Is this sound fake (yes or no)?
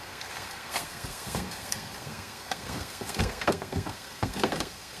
yes